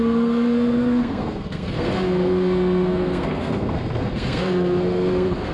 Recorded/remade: remade